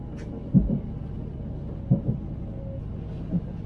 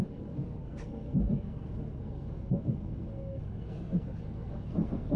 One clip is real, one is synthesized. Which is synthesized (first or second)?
second